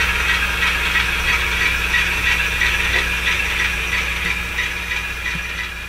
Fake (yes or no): no